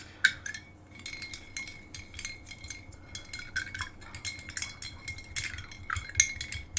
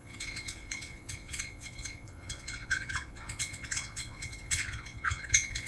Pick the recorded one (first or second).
first